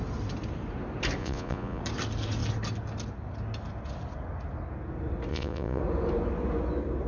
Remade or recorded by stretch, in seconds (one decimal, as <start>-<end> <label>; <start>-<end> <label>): 0.0-1.2 recorded; 1.2-1.8 remade; 1.8-5.3 recorded; 5.3-5.8 remade; 5.8-7.1 recorded

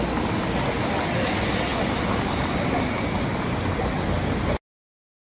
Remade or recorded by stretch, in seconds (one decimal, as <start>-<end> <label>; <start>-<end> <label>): 0.0-5.3 recorded